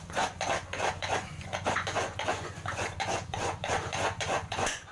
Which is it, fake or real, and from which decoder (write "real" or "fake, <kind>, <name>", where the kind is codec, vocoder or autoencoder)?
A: fake, vocoder, Vocos